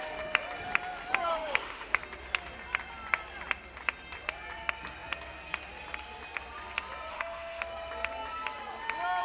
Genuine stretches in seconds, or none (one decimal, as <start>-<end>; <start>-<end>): 0.0-1.3; 2.0-7.1; 7.6-9.2